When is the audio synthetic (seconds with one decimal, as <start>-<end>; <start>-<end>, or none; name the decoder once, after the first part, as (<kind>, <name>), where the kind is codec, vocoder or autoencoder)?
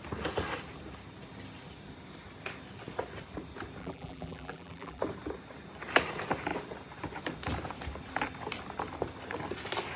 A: 3.8-5.0 (vocoder, BigVGAN v2)